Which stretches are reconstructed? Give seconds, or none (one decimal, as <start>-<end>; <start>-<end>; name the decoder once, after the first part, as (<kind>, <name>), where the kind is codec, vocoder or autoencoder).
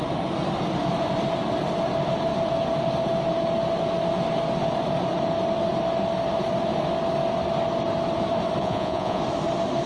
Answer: 8.6-9.2 (vocoder, Vocos)